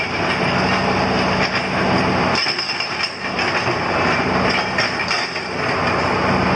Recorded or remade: recorded